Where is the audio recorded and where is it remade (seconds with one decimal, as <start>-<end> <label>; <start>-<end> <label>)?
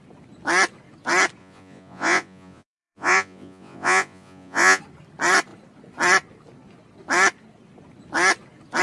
0.0-1.4 recorded; 1.4-4.8 remade; 4.8-8.8 recorded